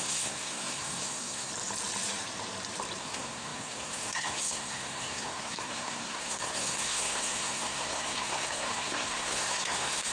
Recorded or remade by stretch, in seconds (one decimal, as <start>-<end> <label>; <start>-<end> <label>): 0.0-1.5 remade; 1.5-3.0 recorded; 3.0-10.1 remade